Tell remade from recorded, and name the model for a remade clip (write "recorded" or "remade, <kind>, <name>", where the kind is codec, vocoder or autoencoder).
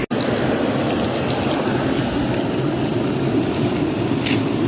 recorded